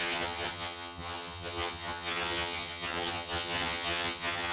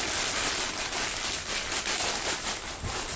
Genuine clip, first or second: second